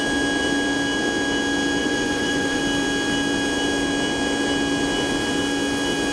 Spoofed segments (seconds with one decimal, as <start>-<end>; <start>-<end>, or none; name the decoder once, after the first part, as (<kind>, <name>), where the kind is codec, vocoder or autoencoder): 1.8-2.6 (vocoder, Vocos)